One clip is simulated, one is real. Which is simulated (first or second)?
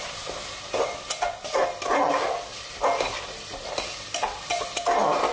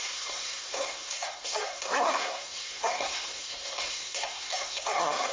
second